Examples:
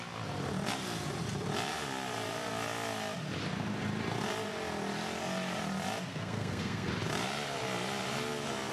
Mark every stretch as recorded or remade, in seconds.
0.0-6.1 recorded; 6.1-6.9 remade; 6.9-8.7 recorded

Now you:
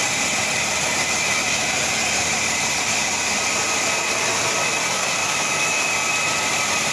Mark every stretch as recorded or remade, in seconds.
0.0-5.2 recorded; 5.2-5.9 remade; 5.9-6.9 recorded

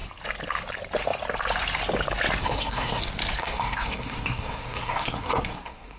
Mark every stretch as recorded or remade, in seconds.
0.0-2.4 recorded; 2.4-3.0 remade; 3.0-3.4 recorded; 3.4-6.0 remade

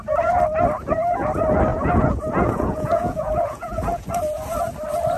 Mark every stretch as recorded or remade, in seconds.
0.0-1.7 recorded; 1.7-4.1 remade; 4.1-5.2 recorded

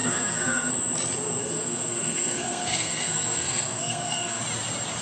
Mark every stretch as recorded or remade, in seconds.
0.0-0.7 remade; 0.7-1.4 recorded; 1.4-4.4 remade; 4.4-5.0 recorded

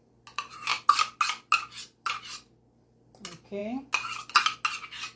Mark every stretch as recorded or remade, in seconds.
0.0-5.2 recorded

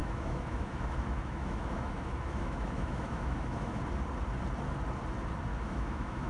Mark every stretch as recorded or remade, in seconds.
0.0-3.8 remade; 3.8-5.5 recorded; 5.5-6.3 remade